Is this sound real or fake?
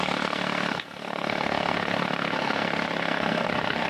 fake